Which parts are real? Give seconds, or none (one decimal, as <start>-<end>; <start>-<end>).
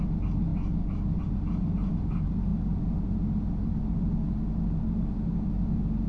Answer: 0.0-6.1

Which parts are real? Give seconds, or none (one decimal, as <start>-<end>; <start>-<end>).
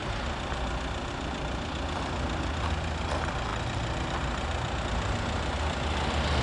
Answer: 0.0-6.4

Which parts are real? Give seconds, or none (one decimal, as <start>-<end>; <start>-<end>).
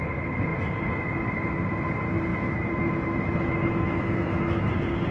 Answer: 0.0-2.3; 4.6-5.1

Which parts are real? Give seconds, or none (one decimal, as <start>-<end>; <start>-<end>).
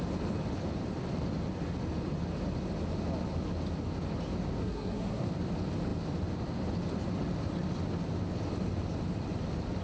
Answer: 0.0-4.6; 5.3-9.8